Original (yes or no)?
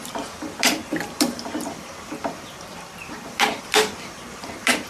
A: yes